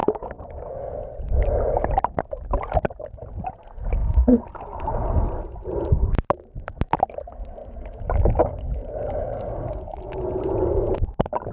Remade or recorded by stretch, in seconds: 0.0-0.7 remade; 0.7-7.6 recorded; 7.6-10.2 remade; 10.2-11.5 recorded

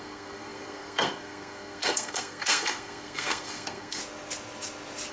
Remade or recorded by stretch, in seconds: 0.0-4.0 remade; 4.0-5.1 recorded

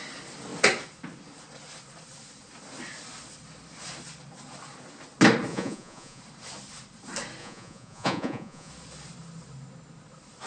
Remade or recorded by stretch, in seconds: 0.0-5.5 recorded; 5.5-6.2 remade; 6.2-7.4 recorded; 7.4-8.7 remade; 8.7-10.5 recorded

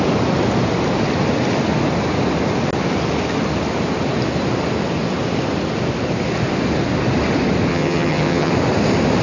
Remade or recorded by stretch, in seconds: 0.0-7.7 recorded; 7.7-8.5 remade; 8.5-9.2 recorded

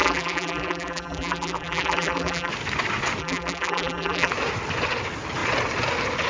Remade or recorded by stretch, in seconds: 0.0-2.5 remade; 2.5-3.2 recorded; 3.2-4.3 remade; 4.3-6.3 recorded